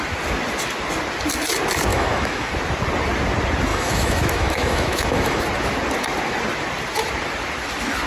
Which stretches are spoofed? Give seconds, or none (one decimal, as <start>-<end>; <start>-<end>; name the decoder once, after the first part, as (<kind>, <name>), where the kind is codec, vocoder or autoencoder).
1.9-2.5 (autoencoder, DAC-VAE); 3.7-5.4